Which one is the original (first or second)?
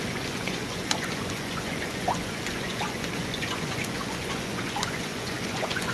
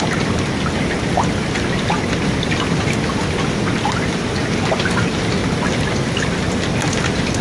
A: second